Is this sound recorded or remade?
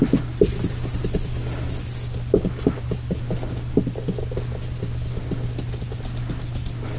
recorded